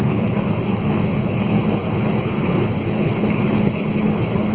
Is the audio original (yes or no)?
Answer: no